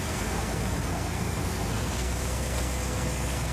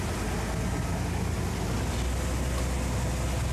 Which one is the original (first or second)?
second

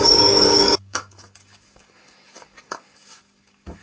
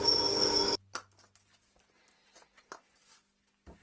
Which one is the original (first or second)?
second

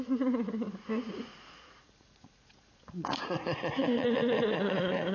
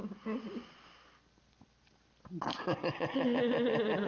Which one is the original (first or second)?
second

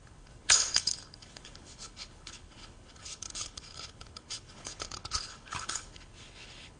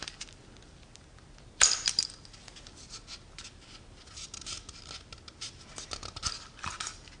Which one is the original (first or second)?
second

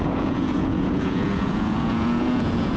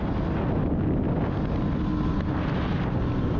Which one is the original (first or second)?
second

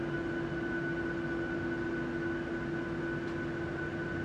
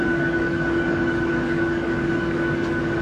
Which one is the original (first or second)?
first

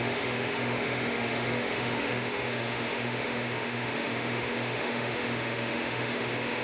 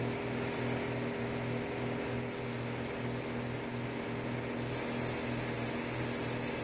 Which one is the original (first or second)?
second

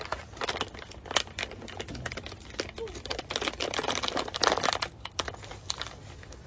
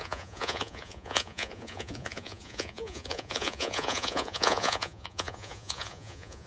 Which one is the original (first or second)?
first